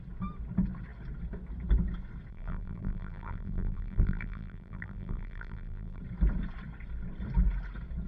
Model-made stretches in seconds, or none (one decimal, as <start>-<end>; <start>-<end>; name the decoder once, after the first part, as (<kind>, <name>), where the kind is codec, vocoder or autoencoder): 2.3-6.0 (vocoder, BigVGAN v2)